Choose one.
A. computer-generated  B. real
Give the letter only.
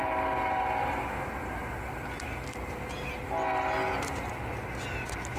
B